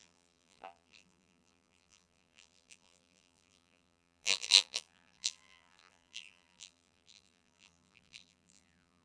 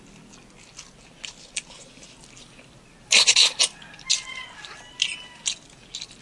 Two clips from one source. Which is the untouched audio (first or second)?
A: second